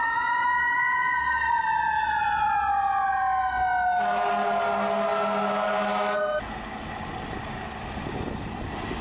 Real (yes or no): yes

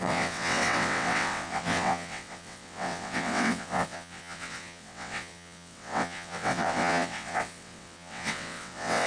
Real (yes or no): no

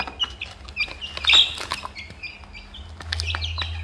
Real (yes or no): yes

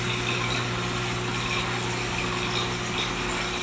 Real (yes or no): yes